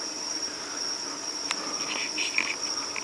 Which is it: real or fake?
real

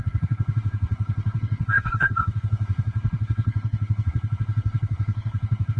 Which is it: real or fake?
fake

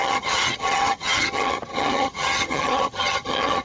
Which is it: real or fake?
fake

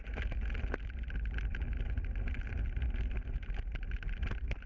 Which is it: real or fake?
real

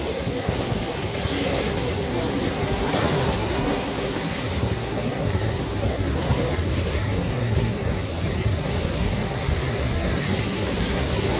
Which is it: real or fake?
fake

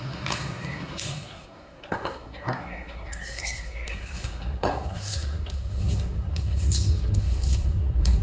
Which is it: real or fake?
fake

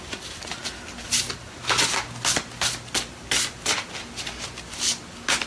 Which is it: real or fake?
real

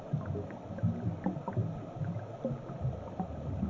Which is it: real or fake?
real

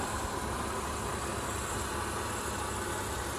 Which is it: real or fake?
real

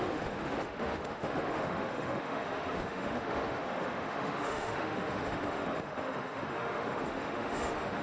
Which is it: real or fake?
fake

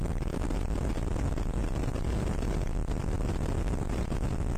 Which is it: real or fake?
real